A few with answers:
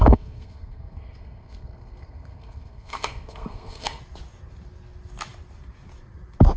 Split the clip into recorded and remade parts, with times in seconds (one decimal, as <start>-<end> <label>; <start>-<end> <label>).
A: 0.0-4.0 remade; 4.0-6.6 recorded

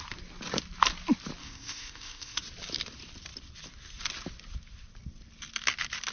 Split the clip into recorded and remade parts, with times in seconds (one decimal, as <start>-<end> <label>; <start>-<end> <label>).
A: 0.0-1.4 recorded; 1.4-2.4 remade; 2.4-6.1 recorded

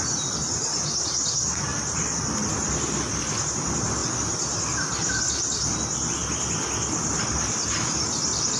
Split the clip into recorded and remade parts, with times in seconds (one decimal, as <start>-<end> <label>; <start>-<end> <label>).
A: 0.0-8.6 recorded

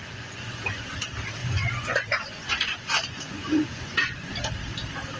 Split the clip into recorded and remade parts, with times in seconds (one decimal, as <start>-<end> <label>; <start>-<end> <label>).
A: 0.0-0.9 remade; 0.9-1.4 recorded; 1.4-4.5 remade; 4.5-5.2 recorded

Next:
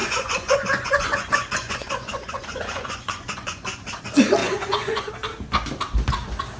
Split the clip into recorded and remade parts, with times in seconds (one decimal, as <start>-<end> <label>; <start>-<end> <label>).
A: 0.0-4.0 remade; 4.0-4.4 recorded; 4.4-5.1 remade; 5.1-6.6 recorded

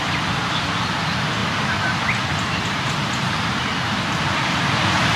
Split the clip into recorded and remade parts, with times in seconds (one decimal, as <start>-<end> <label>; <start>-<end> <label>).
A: 0.0-5.2 recorded

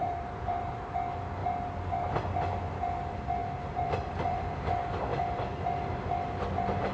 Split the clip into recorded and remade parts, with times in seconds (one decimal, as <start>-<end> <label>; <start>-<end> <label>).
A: 0.0-0.7 remade; 0.7-1.4 recorded; 1.4-2.1 remade; 2.1-3.4 recorded; 3.4-4.5 remade; 4.5-6.9 recorded